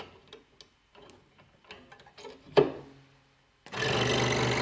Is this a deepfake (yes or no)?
no